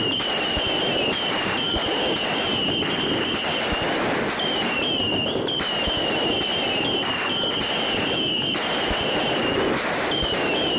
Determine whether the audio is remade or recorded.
recorded